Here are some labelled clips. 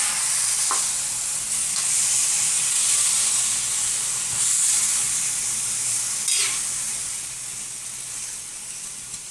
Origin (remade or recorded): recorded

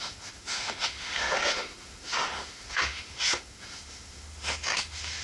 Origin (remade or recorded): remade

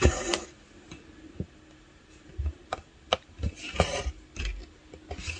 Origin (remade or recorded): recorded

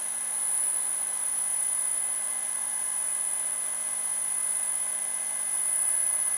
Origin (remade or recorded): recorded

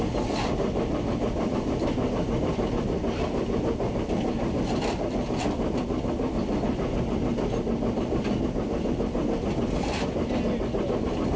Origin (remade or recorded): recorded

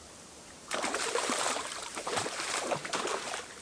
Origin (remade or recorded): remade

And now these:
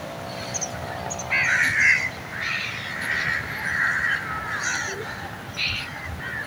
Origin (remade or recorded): recorded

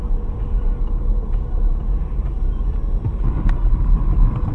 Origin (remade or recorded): recorded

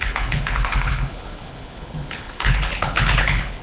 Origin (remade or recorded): remade